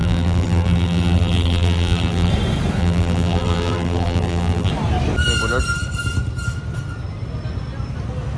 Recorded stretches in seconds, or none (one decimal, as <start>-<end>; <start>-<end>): 2.3-2.8; 4.7-8.4